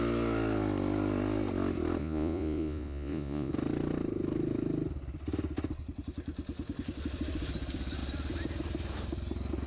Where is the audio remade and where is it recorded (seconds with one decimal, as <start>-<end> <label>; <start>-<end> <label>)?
0.0-2.0 recorded; 2.0-3.5 remade; 3.5-9.7 recorded